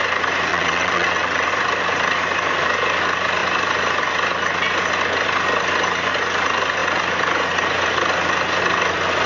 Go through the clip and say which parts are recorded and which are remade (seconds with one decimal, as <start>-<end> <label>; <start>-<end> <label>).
0.0-0.5 recorded; 0.5-1.5 remade; 1.5-9.3 recorded